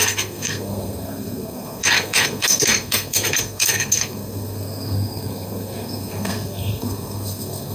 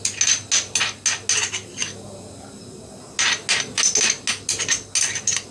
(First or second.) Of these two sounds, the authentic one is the second